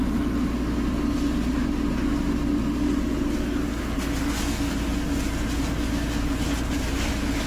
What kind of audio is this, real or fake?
real